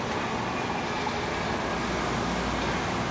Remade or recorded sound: recorded